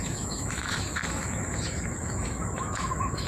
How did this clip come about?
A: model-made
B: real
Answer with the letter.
A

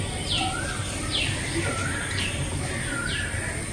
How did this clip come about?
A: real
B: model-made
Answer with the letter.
A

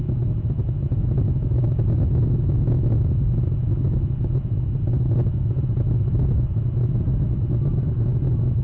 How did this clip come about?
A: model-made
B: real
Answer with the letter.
B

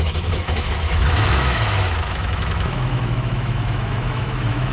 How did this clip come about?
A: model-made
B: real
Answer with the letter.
A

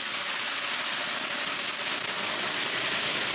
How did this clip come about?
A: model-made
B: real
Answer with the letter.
B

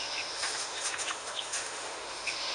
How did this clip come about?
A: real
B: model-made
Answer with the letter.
B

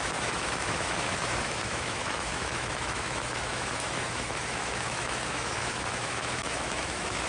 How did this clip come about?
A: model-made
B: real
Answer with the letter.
A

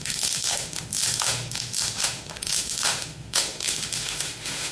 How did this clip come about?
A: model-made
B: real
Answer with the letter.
A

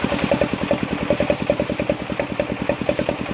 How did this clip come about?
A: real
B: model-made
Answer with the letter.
A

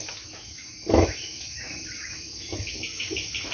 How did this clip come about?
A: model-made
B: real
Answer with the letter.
A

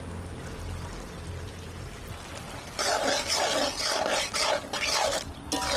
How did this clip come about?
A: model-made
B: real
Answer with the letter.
B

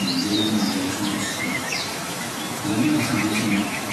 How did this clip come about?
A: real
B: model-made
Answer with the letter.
B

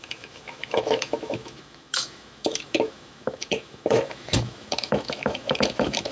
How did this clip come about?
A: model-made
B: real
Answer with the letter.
A